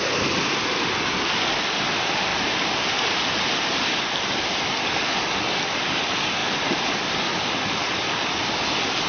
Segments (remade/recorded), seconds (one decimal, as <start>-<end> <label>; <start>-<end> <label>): 0.0-5.2 recorded; 5.2-6.0 remade; 6.0-6.4 recorded; 6.4-8.5 remade; 8.5-9.1 recorded